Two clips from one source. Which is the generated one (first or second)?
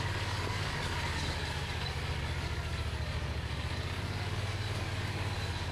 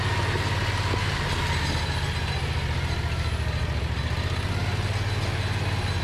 first